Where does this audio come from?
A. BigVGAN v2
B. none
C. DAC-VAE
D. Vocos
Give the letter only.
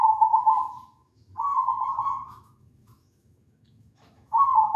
C